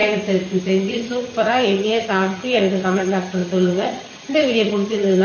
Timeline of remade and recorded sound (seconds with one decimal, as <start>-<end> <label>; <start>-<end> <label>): 0.0-0.6 recorded; 0.6-5.2 remade